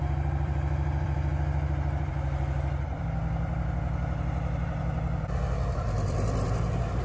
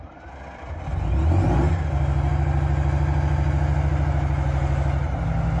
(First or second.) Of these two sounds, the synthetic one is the first